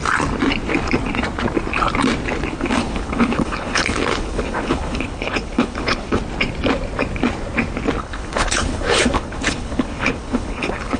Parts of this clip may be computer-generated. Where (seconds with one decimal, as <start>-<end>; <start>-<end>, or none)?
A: 2.5-6.2; 8.0-11.0